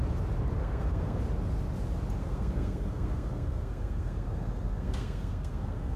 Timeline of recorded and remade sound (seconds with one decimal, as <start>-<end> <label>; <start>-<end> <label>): 0.0-0.6 recorded; 0.6-1.2 remade; 1.2-2.2 recorded; 2.2-6.0 remade